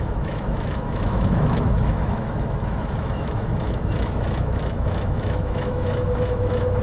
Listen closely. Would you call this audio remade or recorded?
remade